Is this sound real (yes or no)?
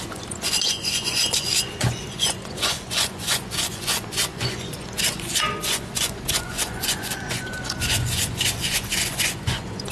no